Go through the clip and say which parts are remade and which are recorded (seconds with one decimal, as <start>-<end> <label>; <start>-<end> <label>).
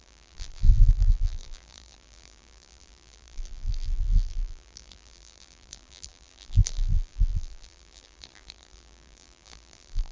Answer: 0.0-10.1 remade